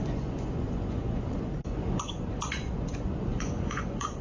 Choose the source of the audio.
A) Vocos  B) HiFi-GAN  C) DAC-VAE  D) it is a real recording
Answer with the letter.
A